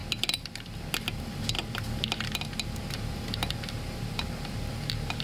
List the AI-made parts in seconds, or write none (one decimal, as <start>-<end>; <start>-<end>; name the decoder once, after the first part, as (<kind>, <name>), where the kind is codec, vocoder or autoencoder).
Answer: none